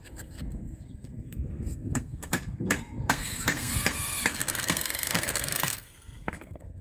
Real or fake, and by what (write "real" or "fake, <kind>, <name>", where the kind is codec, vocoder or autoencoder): fake, codec, SNAC